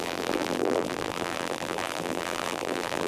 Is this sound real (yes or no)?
no